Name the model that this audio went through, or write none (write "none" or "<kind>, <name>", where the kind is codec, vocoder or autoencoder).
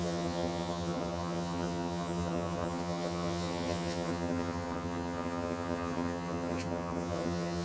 vocoder, HiFi-GAN